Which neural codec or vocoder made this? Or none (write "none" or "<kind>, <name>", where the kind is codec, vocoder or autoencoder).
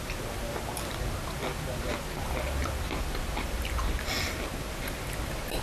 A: none